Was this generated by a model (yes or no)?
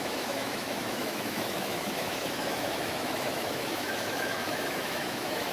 yes